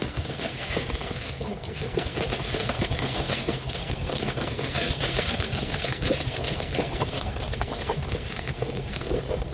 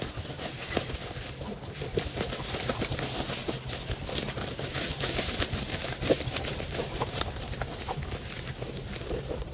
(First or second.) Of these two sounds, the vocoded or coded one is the first